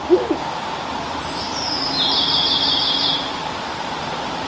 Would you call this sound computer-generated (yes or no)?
yes